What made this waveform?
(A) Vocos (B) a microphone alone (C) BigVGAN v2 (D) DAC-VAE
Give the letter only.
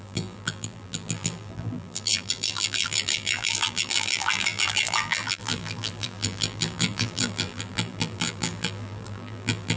C